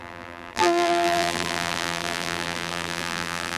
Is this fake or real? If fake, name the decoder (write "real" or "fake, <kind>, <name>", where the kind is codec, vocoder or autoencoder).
fake, vocoder, BigVGAN v2